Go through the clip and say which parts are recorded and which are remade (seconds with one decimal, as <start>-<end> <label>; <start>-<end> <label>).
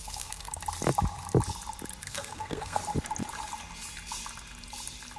0.0-0.6 remade; 0.6-2.0 recorded; 2.0-2.8 remade; 2.8-5.2 recorded